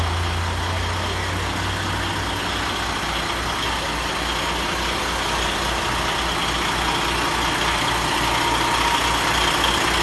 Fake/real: real